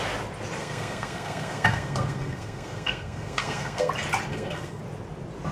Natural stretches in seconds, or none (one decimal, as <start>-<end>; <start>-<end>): 0.0-0.6; 3.9-4.3; 4.8-5.5